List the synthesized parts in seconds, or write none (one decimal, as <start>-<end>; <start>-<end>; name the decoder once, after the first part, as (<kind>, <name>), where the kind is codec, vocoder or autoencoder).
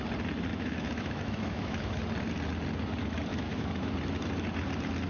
0.5-2.0 (autoencoder, DAC-VAE); 3.3-3.9